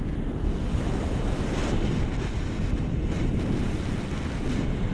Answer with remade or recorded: recorded